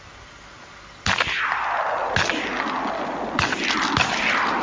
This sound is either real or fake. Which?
real